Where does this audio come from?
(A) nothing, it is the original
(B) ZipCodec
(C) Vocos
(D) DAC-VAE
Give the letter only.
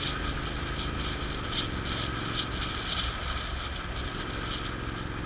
A